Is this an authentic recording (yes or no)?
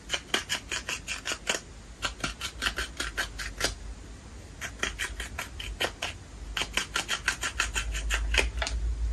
yes